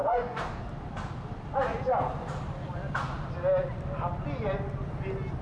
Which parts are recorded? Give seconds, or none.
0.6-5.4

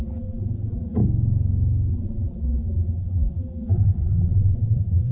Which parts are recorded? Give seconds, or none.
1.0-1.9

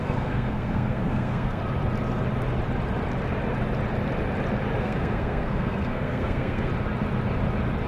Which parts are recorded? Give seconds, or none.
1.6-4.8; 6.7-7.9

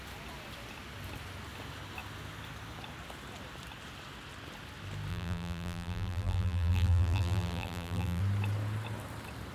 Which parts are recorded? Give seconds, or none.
0.0-5.1; 8.2-9.5

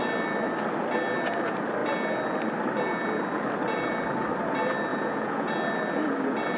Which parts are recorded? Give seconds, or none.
0.0-4.9; 5.5-6.6

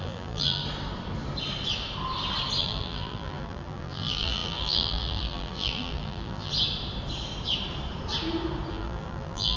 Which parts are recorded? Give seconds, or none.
0.6-2.6; 6.5-8.7

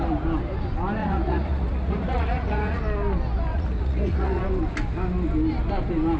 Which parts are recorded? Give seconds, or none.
0.0-1.0; 2.8-3.5; 4.4-6.2